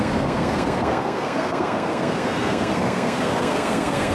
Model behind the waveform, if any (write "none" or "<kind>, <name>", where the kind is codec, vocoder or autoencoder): codec, SNAC